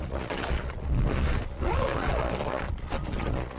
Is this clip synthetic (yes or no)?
yes